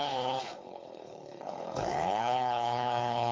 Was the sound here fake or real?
fake